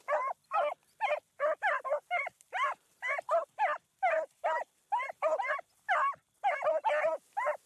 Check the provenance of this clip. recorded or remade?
recorded